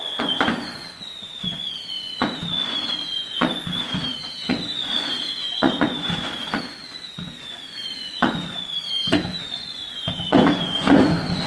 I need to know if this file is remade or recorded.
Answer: remade